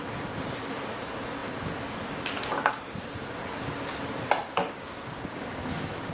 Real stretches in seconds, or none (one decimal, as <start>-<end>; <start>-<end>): 0.0-4.5